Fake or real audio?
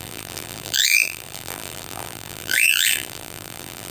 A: fake